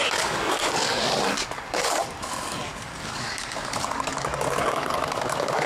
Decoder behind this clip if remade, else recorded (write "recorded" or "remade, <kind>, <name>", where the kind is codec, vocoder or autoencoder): remade, codec, DAC